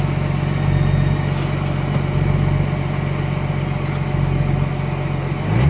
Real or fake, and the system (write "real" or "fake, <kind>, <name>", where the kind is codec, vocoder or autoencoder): real